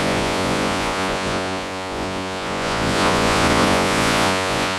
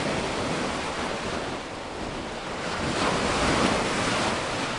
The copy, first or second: first